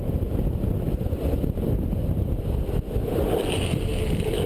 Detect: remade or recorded recorded